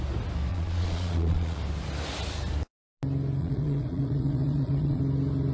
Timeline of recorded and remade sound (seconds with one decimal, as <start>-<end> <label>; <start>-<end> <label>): 0.0-0.5 recorded; 0.5-1.6 remade; 1.6-3.4 recorded; 3.4-5.0 remade; 5.0-5.5 recorded